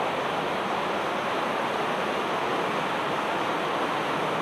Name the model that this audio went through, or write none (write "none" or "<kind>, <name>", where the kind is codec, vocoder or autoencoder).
none